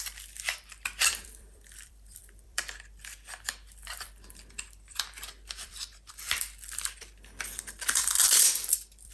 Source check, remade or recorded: remade